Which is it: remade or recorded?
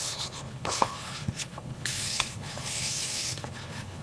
remade